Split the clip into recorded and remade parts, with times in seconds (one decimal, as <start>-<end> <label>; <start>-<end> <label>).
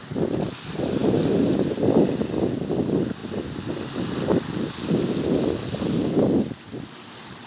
0.0-7.5 recorded